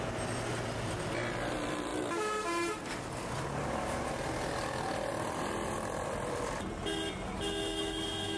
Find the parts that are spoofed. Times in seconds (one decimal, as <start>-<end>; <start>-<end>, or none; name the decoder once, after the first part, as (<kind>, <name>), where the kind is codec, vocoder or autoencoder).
none